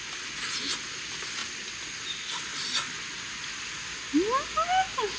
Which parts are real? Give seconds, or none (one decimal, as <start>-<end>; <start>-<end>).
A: 0.0-5.2